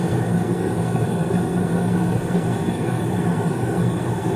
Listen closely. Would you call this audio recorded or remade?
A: remade